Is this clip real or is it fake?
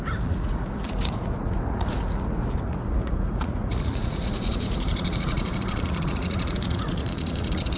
fake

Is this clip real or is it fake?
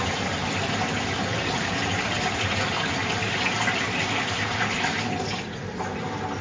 real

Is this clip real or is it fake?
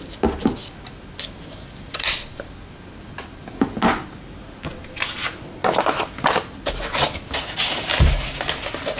real